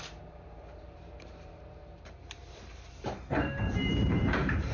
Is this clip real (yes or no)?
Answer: no